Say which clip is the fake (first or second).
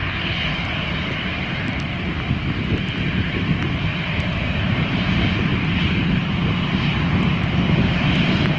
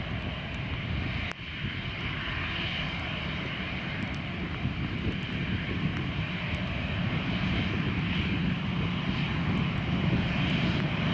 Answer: first